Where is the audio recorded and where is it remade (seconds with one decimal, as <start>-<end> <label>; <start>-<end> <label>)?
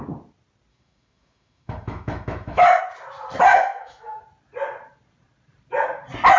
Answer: 0.0-0.7 recorded; 0.7-2.8 remade; 2.8-3.5 recorded; 3.5-4.2 remade; 4.2-6.4 recorded